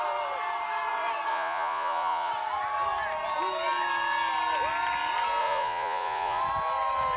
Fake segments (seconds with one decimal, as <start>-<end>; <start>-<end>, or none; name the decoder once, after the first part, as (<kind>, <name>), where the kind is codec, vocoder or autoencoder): 1.3-2.3 (vocoder, Vocos); 5.4-6.4